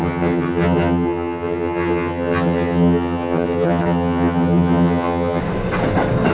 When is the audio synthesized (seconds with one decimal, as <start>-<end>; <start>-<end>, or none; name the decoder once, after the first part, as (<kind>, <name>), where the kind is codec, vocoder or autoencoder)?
0.0-5.4 (vocoder, HiFi-GAN)